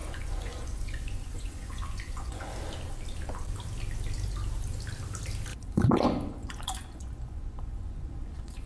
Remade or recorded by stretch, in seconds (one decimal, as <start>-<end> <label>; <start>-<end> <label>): 0.0-2.5 remade; 2.5-5.5 recorded; 5.5-8.7 remade